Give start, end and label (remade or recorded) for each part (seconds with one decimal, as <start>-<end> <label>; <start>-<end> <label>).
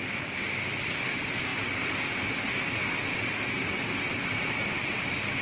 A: 0.0-5.4 recorded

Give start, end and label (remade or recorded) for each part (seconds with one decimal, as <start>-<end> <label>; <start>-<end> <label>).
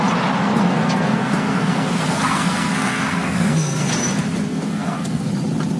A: 0.0-0.4 recorded; 0.4-3.9 remade; 3.9-4.5 recorded; 4.5-5.3 remade; 5.3-5.8 recorded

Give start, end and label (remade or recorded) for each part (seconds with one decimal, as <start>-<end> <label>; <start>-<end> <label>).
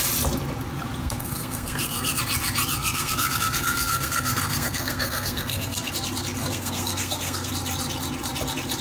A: 0.0-1.0 recorded; 1.0-2.2 remade; 2.2-2.8 recorded; 2.8-5.9 remade; 5.9-6.4 recorded; 6.4-7.5 remade; 7.5-8.8 recorded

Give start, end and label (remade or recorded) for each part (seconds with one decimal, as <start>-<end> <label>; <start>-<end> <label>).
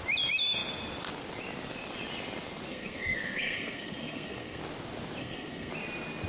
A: 0.0-2.7 recorded; 2.7-4.6 remade; 4.6-5.2 recorded; 5.2-5.7 remade; 5.7-6.3 recorded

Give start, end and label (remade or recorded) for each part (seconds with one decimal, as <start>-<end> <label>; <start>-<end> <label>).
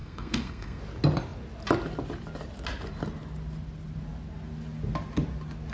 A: 0.0-0.8 remade; 0.8-5.7 recorded